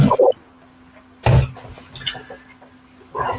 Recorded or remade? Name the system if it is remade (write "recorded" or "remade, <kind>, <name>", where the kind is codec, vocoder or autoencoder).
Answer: recorded